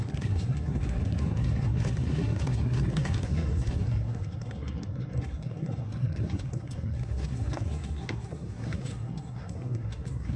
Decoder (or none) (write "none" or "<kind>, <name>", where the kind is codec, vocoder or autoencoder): codec, SNAC